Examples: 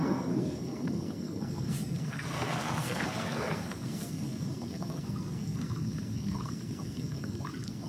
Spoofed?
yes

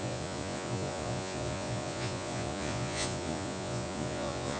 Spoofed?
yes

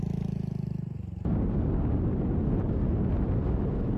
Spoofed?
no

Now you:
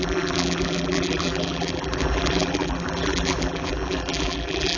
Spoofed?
yes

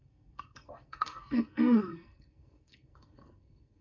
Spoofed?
yes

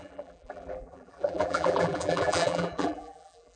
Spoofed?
yes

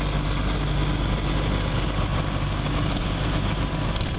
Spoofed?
no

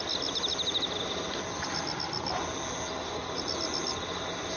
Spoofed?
no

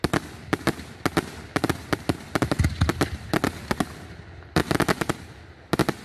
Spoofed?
no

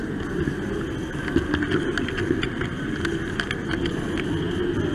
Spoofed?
no